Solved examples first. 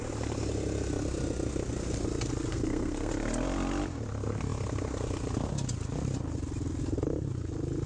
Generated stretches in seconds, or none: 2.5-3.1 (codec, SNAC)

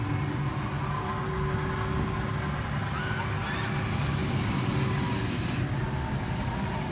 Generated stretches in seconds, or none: none

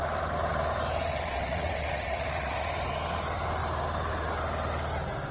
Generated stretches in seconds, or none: 1.1-2.6 (vocoder, WaveNeXt)

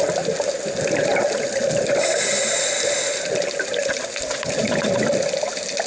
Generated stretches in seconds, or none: none

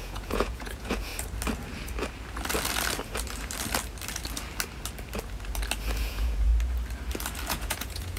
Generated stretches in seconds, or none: 0.0-1.1 (vocoder, Vocos); 6.0-6.5; 7.5-8.2